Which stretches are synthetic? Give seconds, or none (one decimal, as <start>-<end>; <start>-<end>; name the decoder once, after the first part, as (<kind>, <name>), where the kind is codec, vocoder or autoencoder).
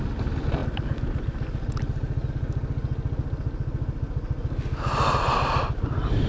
none